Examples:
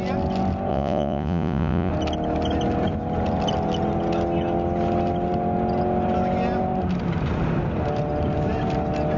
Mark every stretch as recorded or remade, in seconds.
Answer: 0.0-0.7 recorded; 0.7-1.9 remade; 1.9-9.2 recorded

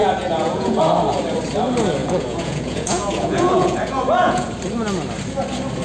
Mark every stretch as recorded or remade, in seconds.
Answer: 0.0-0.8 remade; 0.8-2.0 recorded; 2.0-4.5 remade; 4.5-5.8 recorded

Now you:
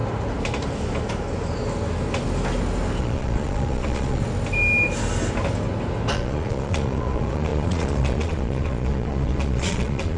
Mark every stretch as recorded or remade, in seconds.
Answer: 0.0-3.0 recorded; 3.0-4.2 remade; 4.2-6.1 recorded; 6.1-10.2 remade

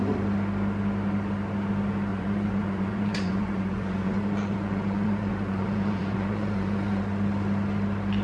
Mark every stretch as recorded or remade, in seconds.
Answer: 0.0-2.1 recorded; 2.1-7.0 remade; 7.0-8.2 recorded

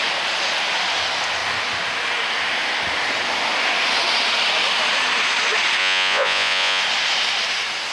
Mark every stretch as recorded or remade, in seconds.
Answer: 0.0-5.8 recorded; 5.8-6.8 remade; 6.8-7.9 recorded